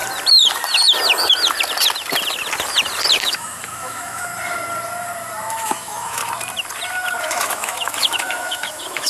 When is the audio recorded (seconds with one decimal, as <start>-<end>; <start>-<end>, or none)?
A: 0.0-3.2; 4.3-5.5; 6.2-7.2